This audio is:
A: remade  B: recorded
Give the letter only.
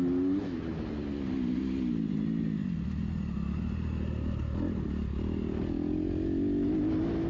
B